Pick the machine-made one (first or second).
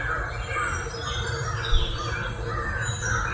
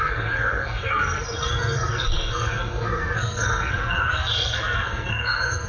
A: second